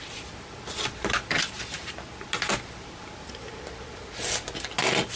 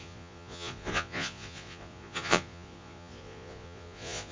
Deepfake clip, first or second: second